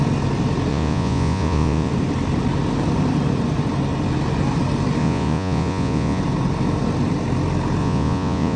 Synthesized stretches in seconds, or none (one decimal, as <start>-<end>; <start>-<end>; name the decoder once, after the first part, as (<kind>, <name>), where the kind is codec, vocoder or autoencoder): 0.7-1.9 (vocoder, Vocos); 5.0-6.2; 7.8-8.6